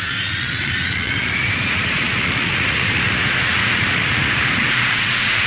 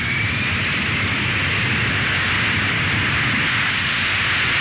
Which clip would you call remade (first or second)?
first